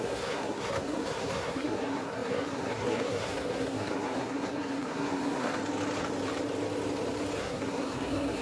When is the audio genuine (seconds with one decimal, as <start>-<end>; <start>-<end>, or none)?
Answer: 5.5-7.4